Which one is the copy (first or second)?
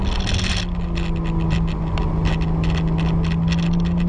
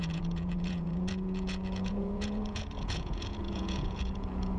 second